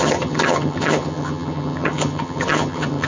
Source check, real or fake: fake